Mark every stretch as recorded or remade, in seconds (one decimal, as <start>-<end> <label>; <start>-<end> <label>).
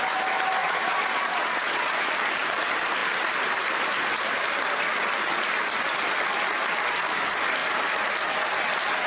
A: 0.0-0.6 recorded; 0.6-2.1 remade; 2.1-9.1 recorded